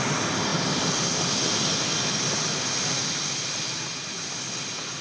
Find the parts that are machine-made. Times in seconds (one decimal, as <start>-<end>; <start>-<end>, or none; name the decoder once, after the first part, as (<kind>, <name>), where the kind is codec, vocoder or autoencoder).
none